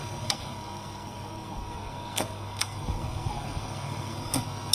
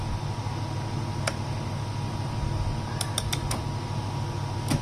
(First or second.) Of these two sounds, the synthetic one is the first